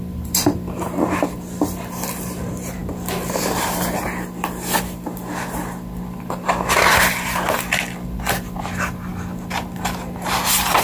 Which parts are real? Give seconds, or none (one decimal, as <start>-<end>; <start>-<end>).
9.1-10.2